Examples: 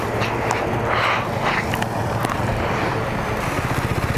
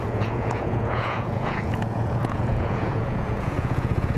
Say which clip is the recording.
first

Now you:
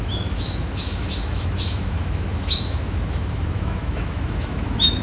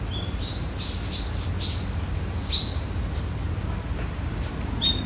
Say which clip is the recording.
second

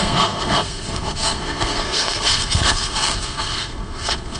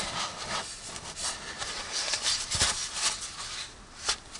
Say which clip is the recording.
second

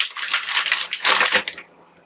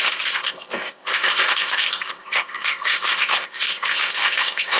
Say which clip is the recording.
first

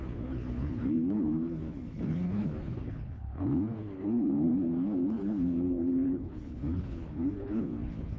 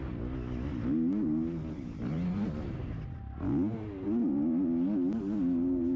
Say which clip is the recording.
second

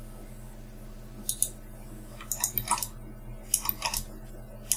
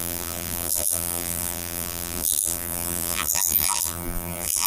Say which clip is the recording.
first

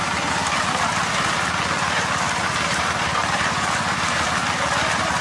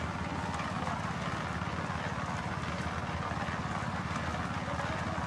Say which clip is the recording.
second